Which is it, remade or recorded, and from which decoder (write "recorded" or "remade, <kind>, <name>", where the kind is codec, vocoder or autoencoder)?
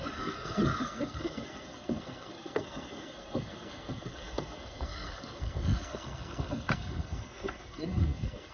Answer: remade, codec, SNAC